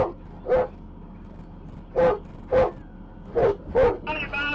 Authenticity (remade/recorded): recorded